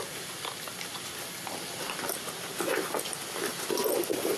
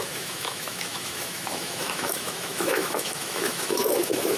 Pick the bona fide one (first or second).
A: first